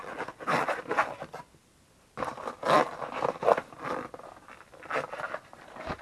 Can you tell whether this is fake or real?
real